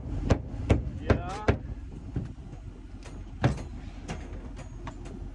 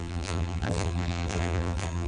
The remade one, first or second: second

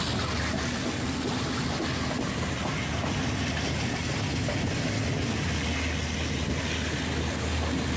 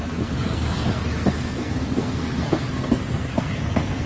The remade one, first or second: second